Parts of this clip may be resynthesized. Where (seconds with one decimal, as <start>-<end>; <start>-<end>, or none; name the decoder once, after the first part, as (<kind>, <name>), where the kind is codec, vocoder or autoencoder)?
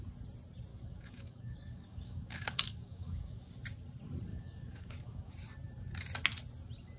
0.7-3.5 (codec, DAC); 4.3-5.3